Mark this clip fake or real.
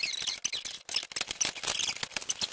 real